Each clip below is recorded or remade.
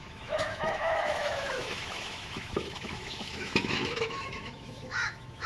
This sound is remade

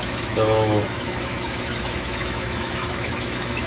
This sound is remade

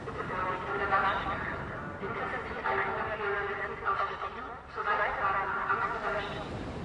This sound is recorded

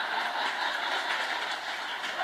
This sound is recorded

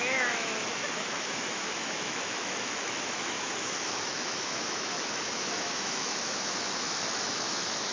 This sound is remade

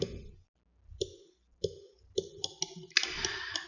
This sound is recorded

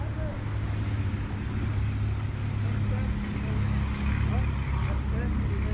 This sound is recorded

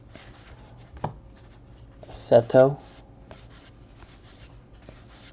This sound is recorded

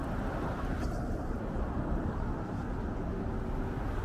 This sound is recorded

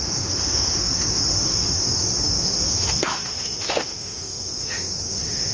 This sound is remade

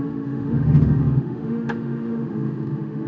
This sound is remade